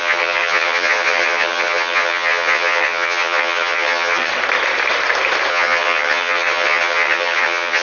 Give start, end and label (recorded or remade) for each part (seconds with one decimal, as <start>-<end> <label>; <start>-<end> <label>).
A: 0.0-4.3 remade; 4.3-5.5 recorded; 5.5-7.8 remade